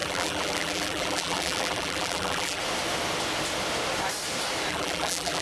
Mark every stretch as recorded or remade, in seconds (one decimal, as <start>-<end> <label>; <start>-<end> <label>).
0.0-2.6 remade; 2.6-4.7 recorded; 4.7-5.4 remade